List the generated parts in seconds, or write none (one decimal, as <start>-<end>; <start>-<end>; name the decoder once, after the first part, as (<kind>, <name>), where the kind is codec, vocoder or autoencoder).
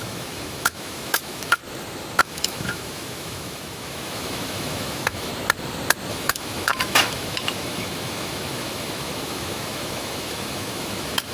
0.0-1.6 (autoencoder, DAC-VAE); 2.2-5.3; 6.1-11.3